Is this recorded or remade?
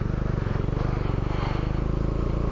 recorded